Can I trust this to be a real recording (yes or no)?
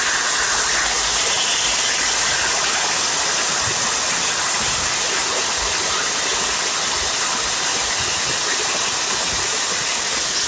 yes